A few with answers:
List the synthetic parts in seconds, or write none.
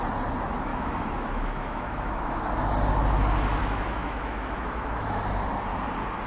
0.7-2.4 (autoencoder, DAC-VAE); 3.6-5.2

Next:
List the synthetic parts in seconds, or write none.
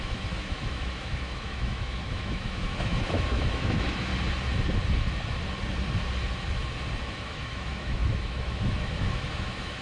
0.0-4.1 (autoencoder, DAC-VAE); 7.1-9.8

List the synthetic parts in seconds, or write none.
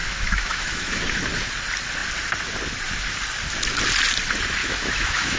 0.0-1.2 (autoencoder, DAC-VAE); 4.6-5.4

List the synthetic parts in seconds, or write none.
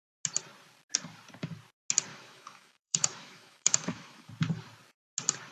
2.1-4.3 (autoencoder, DAC-VAE)